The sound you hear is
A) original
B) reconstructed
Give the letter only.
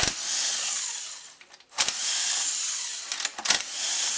A